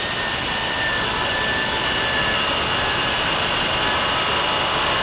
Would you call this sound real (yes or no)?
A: yes